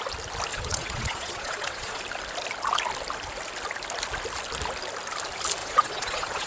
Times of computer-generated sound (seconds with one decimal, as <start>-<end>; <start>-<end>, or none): 0.5-2.0; 5.6-6.5